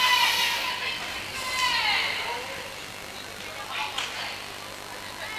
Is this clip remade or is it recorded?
recorded